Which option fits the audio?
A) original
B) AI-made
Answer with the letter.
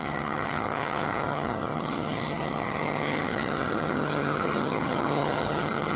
B